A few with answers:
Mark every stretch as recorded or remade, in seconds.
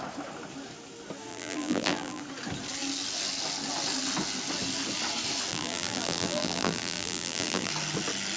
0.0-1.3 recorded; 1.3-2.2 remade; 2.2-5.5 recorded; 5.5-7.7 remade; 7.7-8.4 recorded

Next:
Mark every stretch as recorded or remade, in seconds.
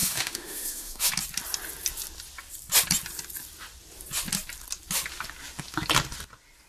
0.0-1.1 remade; 1.1-6.7 recorded